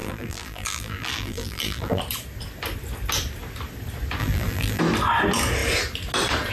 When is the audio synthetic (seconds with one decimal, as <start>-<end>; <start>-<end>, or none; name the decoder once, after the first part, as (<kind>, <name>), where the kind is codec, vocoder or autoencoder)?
0.0-2.0 (vocoder, BigVGAN v2); 4.2-4.8